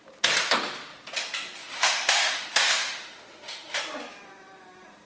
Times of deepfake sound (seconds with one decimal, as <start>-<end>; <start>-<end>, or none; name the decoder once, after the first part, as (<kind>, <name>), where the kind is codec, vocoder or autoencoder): 1.6-3.8 (autoencoder, DAC-VAE)